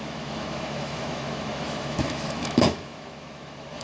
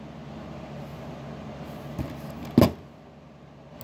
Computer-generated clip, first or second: first